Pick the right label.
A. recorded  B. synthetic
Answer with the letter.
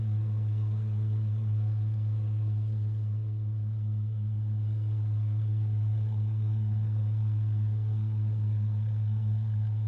B